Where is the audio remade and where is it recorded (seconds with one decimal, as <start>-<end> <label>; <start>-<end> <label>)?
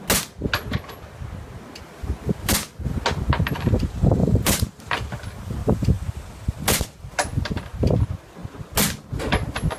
0.0-4.2 recorded; 4.2-4.8 remade; 4.8-5.6 recorded; 5.6-6.2 remade; 6.2-9.8 recorded